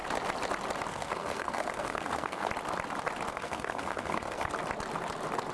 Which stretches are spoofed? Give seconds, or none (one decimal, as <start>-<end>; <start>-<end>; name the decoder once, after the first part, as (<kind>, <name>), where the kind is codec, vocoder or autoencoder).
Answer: 0.9-2.5 (codec, SNAC); 3.3-4.5